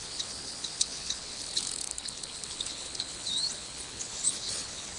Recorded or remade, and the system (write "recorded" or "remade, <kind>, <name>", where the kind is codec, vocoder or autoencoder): remade, codec, HILCodec